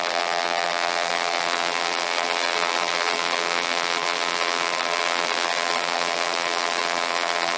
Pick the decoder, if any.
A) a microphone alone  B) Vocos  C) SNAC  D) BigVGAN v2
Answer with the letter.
D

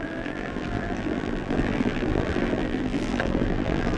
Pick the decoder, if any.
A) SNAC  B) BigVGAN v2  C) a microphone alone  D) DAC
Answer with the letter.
B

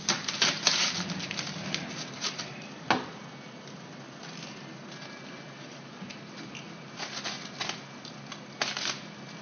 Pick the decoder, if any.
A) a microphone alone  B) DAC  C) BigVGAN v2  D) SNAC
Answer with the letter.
A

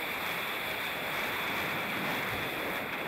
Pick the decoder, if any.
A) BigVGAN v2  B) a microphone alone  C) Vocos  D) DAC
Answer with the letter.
B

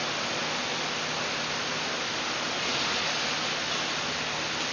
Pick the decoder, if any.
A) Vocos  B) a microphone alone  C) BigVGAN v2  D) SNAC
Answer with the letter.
B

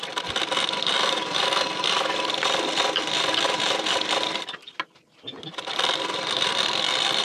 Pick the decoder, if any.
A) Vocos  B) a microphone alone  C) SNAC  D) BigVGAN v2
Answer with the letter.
D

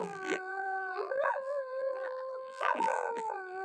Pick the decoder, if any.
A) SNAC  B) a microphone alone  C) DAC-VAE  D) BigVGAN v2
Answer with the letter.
D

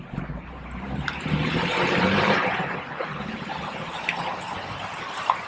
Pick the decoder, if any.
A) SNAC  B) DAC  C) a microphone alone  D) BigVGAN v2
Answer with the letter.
D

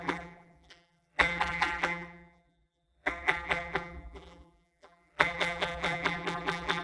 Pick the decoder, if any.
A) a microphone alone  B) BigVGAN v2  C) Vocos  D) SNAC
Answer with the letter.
B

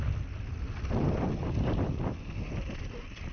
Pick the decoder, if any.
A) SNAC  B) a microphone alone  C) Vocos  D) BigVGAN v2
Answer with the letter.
B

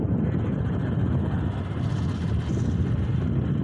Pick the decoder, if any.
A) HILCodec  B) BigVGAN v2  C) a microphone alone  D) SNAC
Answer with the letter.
C